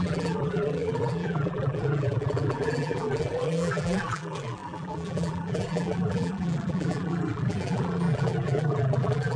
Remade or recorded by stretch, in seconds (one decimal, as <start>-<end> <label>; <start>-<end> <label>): 0.0-9.4 remade